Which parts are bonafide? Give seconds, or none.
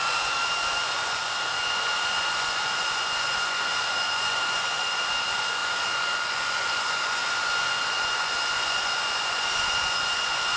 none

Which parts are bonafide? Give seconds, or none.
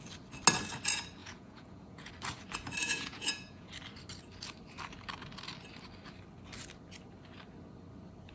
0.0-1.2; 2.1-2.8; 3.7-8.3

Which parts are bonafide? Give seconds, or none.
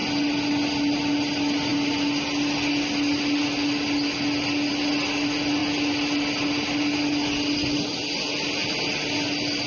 0.0-9.7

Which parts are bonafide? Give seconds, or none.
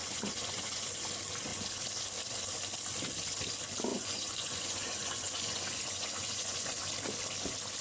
1.0-3.9; 6.8-7.8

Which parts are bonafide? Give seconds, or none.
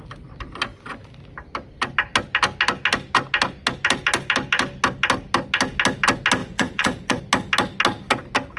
0.0-6.4; 7.2-8.6